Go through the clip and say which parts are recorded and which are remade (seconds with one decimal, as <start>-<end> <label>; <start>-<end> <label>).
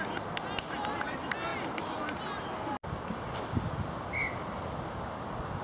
0.0-5.6 recorded